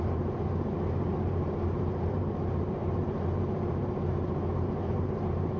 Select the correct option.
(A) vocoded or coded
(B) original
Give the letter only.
A